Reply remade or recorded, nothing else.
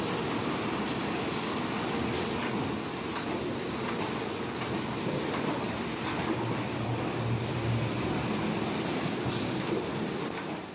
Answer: recorded